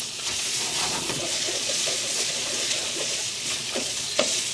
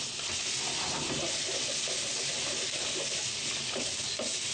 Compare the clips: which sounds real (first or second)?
second